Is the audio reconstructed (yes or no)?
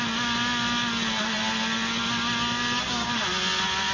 no